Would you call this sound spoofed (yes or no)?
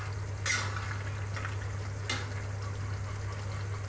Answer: no